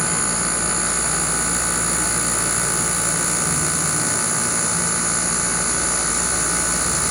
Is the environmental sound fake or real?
real